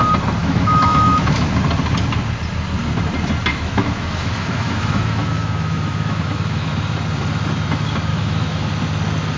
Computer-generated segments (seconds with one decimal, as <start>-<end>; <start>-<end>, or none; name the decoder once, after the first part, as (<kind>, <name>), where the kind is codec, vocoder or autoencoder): 0.4-1.5 (autoencoder, DAC-VAE); 3.5-6.7; 8.1-8.7